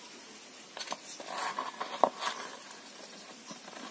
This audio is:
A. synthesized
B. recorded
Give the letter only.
B